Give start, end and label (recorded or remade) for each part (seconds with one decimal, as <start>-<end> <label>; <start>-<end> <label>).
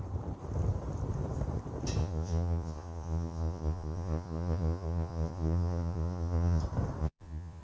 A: 0.0-2.0 recorded; 2.0-6.6 remade; 6.6-7.0 recorded; 7.0-7.6 remade